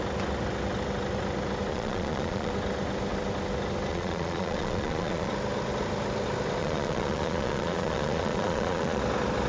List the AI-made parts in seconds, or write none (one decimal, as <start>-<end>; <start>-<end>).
1.7-2.5; 3.9-5.3; 6.6-9.0